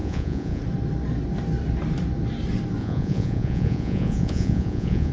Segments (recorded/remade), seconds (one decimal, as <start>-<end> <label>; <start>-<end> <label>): 0.0-0.6 remade; 0.6-2.8 recorded; 2.8-5.1 remade